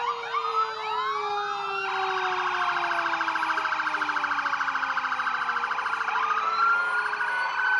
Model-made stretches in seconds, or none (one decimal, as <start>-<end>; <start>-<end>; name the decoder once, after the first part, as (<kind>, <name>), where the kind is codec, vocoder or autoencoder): none